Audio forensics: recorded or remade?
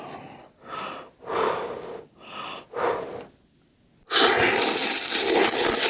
recorded